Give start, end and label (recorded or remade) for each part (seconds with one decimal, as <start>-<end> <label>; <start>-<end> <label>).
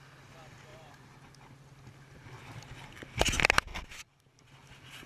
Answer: 0.0-0.7 recorded; 0.7-1.3 remade; 1.3-3.7 recorded; 3.7-4.5 remade; 4.5-5.1 recorded